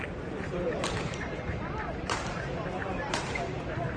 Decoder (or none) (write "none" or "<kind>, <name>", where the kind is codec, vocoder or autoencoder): vocoder, BigVGAN v2